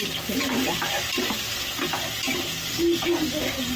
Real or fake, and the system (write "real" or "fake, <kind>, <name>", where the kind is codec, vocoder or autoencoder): real